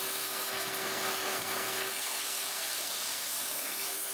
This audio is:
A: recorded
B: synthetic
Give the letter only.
B